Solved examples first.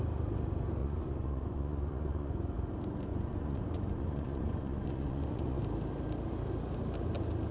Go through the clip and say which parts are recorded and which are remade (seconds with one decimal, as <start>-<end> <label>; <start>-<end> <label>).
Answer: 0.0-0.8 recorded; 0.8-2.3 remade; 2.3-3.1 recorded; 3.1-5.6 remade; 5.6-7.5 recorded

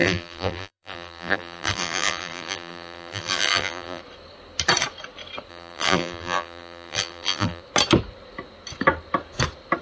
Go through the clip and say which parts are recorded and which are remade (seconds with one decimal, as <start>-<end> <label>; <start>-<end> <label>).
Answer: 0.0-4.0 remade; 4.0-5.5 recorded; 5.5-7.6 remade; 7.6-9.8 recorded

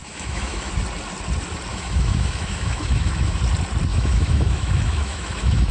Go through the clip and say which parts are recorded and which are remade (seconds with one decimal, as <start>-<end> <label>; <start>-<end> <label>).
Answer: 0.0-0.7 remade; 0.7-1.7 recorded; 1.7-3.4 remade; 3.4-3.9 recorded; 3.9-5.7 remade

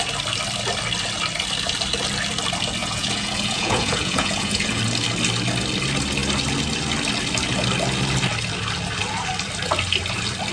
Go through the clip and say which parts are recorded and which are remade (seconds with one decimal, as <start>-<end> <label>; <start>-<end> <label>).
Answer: 0.0-2.8 recorded; 2.8-4.8 remade; 4.8-10.5 recorded

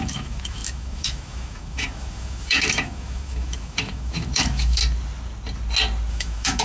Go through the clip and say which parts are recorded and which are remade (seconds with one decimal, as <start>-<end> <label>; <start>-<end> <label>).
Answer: 0.0-4.8 remade; 4.8-6.1 recorded; 6.1-6.6 remade